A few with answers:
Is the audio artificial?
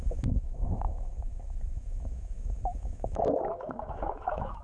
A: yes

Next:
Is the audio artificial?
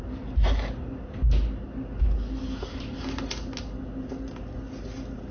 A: no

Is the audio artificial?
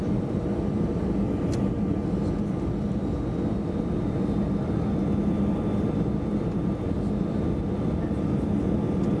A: no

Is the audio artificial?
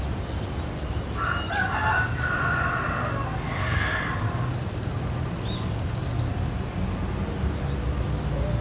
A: no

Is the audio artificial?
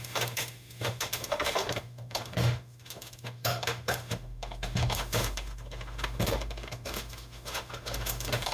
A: yes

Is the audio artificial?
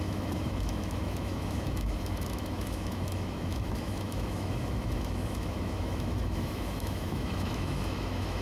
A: yes